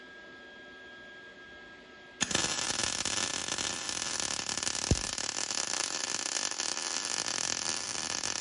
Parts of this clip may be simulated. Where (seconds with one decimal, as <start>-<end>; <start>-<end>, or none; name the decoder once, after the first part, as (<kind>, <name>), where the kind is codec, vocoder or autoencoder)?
none